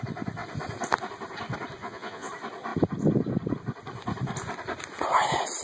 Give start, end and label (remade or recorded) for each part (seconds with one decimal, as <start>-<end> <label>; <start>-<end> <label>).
0.0-1.8 recorded; 1.8-2.3 remade; 2.3-5.6 recorded